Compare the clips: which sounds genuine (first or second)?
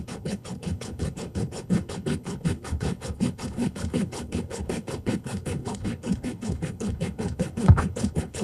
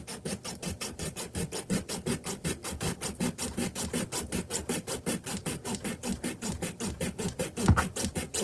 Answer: second